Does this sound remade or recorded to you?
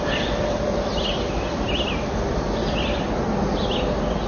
recorded